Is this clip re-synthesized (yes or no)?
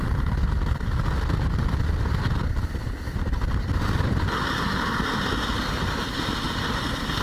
no